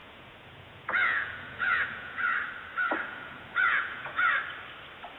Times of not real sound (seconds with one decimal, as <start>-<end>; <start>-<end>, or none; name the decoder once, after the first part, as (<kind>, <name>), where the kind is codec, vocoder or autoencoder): 0.0-2.2 (vocoder, Vocos); 3.1-4.3